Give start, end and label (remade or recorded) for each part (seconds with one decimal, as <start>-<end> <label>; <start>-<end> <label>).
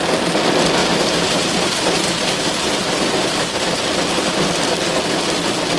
0.0-0.8 recorded; 0.8-3.8 remade; 3.8-5.8 recorded